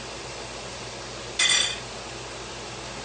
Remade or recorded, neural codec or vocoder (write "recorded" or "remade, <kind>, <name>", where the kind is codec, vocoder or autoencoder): recorded